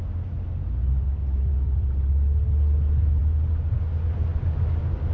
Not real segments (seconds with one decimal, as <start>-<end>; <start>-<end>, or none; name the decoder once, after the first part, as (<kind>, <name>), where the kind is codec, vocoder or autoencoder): none